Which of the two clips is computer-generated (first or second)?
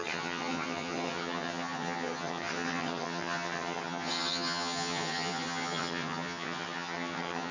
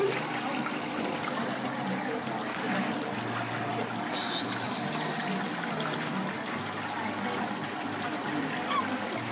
first